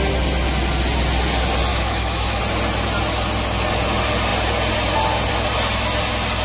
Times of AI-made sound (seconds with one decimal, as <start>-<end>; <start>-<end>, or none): 1.7-2.4